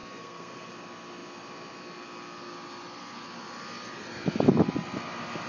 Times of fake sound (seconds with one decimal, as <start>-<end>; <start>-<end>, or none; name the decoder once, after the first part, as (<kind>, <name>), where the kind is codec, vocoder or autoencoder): 0.0-0.7 (codec, SNAC)